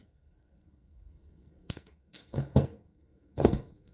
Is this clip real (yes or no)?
no